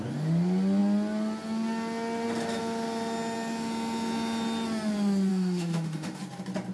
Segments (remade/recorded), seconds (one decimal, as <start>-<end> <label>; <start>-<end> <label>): 0.0-5.3 recorded; 5.3-6.2 remade; 6.2-6.7 recorded